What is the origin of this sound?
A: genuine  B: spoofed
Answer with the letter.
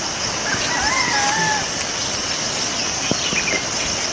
A